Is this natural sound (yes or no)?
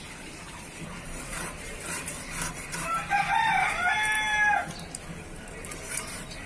no